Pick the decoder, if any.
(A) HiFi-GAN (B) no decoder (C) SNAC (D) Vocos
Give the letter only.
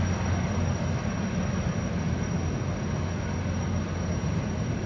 B